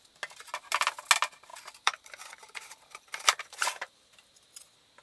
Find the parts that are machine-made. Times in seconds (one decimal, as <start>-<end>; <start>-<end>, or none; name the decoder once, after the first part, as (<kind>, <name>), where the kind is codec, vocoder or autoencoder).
1.5-4.5 (vocoder, BigVGAN v2)